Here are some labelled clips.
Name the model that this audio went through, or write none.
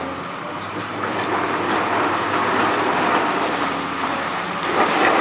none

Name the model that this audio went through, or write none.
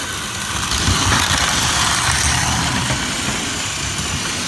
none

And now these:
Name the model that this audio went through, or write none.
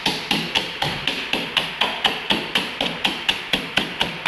vocoder, BigVGAN v2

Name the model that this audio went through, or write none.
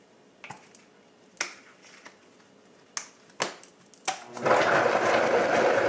none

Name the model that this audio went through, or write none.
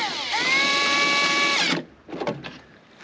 none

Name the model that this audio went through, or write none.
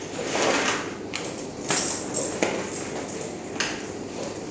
none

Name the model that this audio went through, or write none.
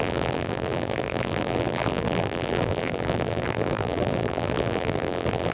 vocoder, BigVGAN v2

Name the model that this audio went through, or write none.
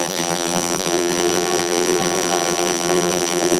vocoder, BigVGAN v2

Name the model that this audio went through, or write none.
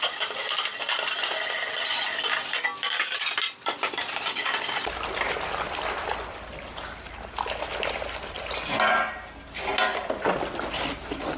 none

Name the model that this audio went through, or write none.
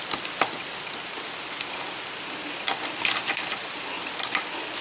none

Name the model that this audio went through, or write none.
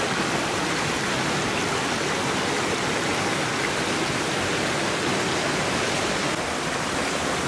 none